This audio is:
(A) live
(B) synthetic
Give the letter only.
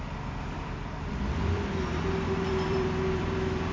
B